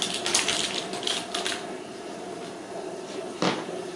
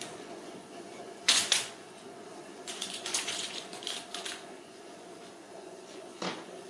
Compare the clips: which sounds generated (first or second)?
second